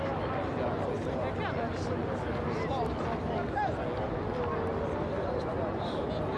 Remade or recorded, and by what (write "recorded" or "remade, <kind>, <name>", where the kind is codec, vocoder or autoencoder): recorded